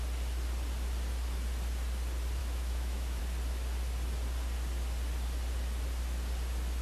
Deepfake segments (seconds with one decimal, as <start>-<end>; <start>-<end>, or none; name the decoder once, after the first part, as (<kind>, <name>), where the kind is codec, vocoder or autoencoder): 2.4-3.2 (autoencoder, DAC-VAE)